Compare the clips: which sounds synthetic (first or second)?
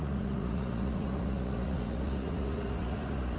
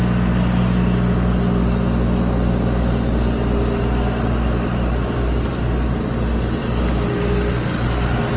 first